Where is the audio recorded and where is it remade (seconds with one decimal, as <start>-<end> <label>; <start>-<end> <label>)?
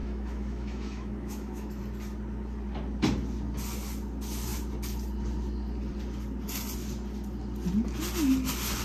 0.0-1.8 remade; 1.8-8.8 recorded